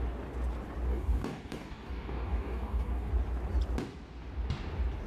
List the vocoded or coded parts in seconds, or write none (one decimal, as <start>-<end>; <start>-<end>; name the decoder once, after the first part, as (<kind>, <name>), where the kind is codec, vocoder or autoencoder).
0.9-3.1 (codec, DAC)